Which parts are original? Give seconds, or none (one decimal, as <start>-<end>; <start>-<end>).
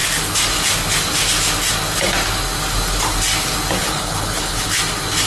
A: 0.0-3.8; 4.8-5.3